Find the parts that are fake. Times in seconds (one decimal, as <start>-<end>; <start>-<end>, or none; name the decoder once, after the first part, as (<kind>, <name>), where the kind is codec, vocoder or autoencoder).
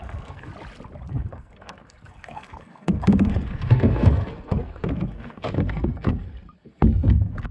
0.0-0.5 (codec, SNAC); 1.1-7.5